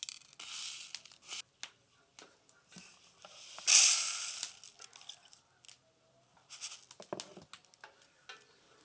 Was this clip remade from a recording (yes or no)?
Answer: no